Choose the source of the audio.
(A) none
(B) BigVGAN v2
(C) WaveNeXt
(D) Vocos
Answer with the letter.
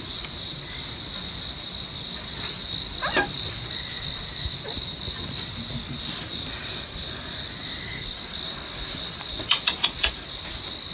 B